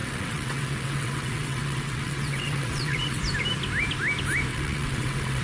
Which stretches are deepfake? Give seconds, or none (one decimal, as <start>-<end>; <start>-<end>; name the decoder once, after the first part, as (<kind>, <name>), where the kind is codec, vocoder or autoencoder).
0.0-3.2 (vocoder, WaveNeXt); 4.5-5.4